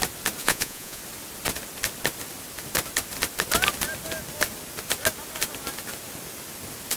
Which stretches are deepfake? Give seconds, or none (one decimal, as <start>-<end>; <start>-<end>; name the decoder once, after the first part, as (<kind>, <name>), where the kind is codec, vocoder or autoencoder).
0.4-1.0 (vocoder, Vocos)